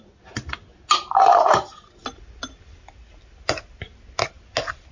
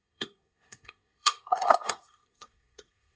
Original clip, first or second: first